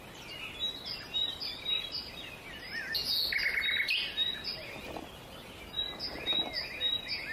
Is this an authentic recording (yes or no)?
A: yes